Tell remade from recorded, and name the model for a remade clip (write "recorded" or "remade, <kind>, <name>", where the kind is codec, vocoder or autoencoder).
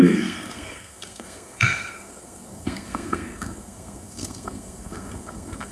remade, codec, SNAC